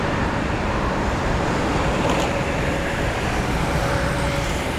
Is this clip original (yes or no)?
no